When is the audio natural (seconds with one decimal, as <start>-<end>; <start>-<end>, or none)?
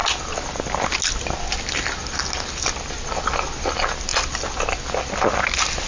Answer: 0.0-5.9